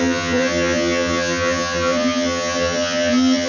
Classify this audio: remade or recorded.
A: remade